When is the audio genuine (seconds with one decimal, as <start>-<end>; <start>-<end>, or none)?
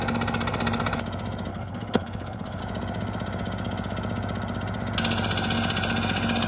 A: 0.0-1.5; 2.6-6.5